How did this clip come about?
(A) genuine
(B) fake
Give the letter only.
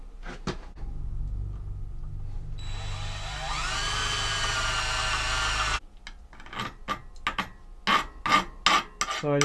A